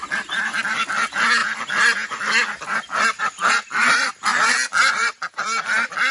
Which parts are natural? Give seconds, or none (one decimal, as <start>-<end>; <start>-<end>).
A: 0.0-6.1